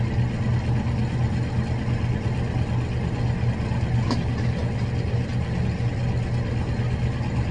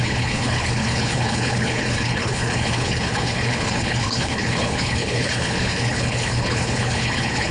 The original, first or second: first